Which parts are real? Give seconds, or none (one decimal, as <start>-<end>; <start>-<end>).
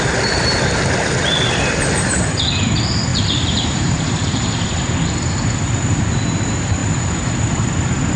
0.0-3.1; 4.6-6.8; 7.7-8.2